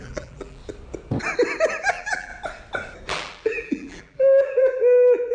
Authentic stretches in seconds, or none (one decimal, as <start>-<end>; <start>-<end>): 0.6-1.9; 2.3-3.1